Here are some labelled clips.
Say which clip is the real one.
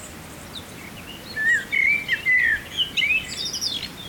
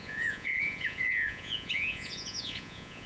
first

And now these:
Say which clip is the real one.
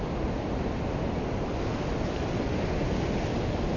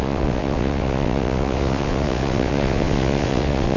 first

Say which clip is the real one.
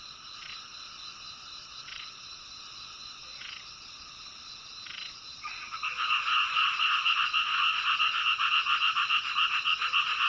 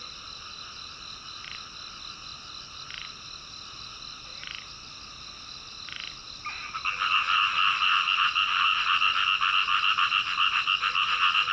second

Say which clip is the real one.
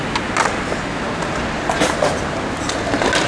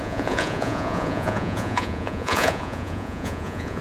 first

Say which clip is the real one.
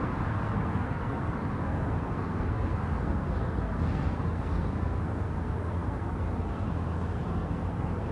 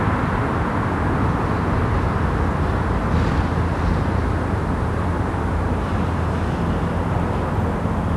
second